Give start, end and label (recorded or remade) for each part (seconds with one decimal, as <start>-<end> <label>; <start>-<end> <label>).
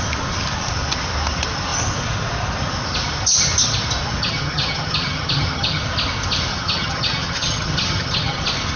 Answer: 0.0-4.2 recorded; 4.2-5.8 remade; 5.8-6.5 recorded; 6.5-8.4 remade; 8.4-8.8 recorded